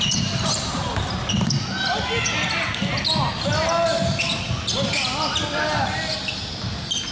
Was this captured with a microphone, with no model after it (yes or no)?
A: yes